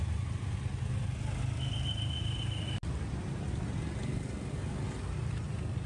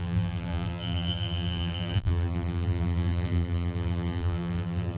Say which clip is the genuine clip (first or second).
first